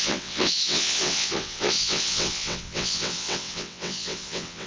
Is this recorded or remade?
remade